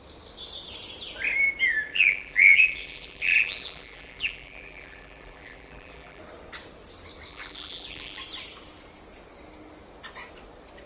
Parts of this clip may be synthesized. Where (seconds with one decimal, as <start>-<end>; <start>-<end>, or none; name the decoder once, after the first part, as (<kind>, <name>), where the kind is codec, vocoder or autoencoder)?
1.9-6.2 (vocoder, BigVGAN v2); 7.3-8.2